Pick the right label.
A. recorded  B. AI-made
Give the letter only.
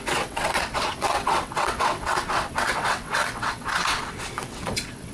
B